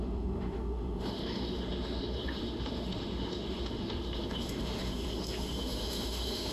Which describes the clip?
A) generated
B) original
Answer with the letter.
A